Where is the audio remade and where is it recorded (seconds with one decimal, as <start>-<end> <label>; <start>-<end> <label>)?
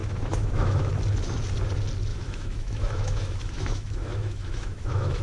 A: 0.0-0.9 remade; 0.9-2.1 recorded; 2.1-5.2 remade